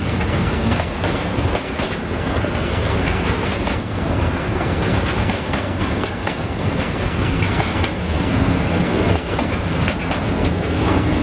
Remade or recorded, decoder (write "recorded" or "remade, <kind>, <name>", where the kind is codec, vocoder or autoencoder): remade, codec, SNAC